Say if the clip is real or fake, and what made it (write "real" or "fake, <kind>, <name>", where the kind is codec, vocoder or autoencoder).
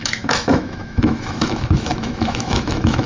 fake, autoencoder, DAC-VAE